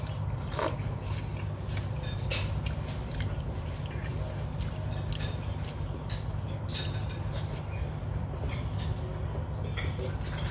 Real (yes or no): yes